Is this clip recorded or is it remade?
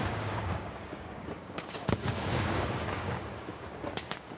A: remade